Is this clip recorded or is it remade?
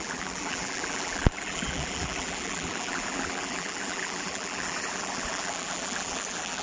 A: remade